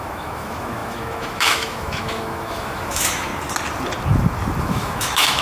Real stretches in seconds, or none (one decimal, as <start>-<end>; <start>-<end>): 3.3-4.6

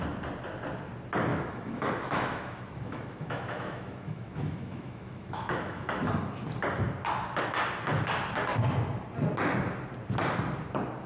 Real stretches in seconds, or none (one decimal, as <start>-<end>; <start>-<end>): 0.0-1.3; 6.1-11.1

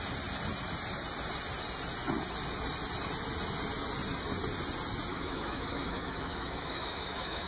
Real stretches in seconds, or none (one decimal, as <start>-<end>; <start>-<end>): 0.0-5.1